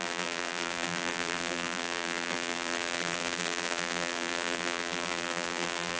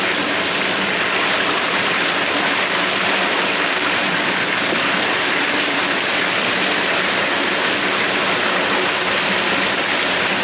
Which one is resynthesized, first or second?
first